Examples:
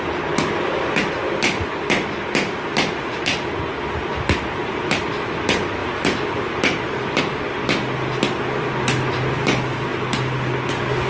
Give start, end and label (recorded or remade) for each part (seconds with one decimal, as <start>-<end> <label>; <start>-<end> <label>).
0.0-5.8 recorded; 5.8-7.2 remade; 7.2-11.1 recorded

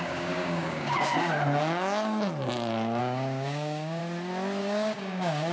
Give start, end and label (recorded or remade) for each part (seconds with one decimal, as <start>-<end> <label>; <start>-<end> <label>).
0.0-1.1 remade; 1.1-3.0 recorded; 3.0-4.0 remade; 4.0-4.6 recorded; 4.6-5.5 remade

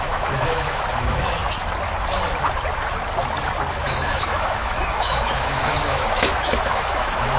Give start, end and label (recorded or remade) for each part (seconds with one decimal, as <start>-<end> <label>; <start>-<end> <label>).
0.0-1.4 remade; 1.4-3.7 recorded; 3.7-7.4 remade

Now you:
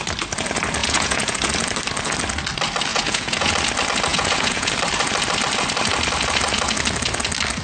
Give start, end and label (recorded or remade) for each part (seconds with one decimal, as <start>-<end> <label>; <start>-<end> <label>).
0.0-0.8 recorded; 0.8-1.4 remade; 1.4-2.9 recorded; 2.9-3.5 remade; 3.5-4.1 recorded; 4.1-4.7 remade; 4.7-7.6 recorded